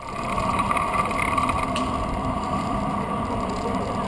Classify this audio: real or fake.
fake